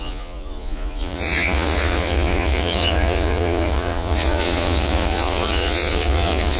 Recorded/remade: remade